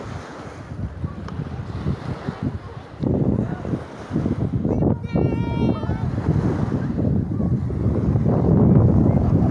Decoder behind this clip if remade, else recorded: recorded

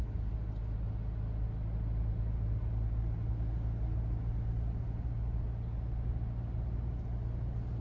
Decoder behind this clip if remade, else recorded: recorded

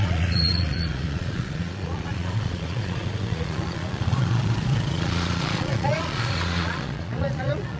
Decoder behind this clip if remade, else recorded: remade, vocoder, Vocos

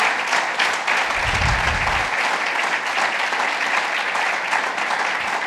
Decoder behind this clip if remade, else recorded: recorded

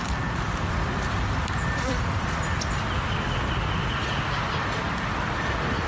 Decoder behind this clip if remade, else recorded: recorded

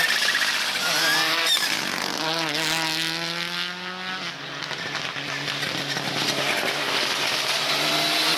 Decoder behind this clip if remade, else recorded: recorded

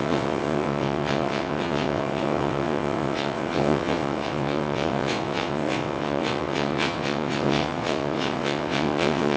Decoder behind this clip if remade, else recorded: remade, vocoder, WaveNeXt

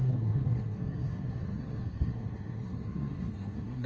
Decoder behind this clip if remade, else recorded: remade, codec, SNAC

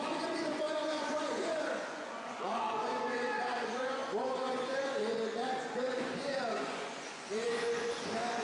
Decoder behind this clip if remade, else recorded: remade, vocoder, Vocos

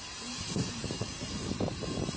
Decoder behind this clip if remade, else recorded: remade, vocoder, BigVGAN v2